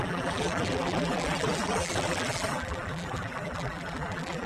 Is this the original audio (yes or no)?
no